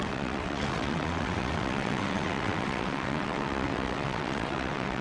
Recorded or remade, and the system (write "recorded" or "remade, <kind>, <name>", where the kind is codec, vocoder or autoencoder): remade, vocoder, WaveNeXt